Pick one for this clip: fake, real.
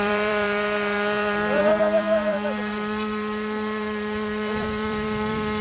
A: fake